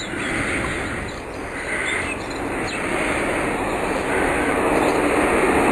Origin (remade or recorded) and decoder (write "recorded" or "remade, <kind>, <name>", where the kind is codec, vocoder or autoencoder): recorded